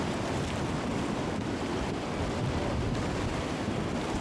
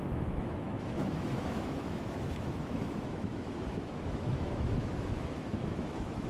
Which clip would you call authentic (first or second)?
first